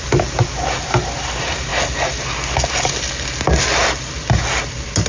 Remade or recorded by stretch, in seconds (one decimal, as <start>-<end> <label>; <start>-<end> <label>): 0.0-5.1 recorded